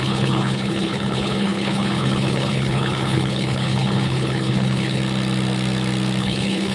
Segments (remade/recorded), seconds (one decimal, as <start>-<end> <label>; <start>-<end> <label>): 0.0-5.0 remade; 5.0-6.2 recorded; 6.2-6.7 remade